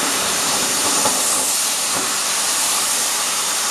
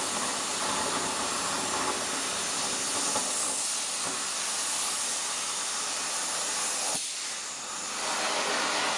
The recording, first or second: second